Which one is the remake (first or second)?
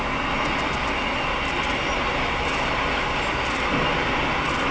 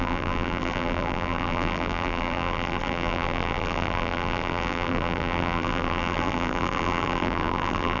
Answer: second